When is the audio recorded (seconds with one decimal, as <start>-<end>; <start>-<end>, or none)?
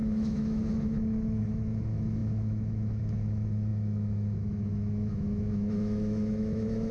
none